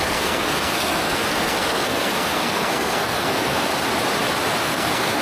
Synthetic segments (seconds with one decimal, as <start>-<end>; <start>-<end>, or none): 0.0-3.7; 4.6-5.2